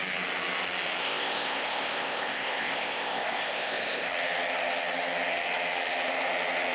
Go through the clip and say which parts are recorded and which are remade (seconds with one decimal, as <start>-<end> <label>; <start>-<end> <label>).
0.0-1.0 recorded; 1.0-4.1 remade; 4.1-6.7 recorded